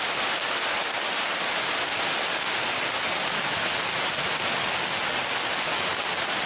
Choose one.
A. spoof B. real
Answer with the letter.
B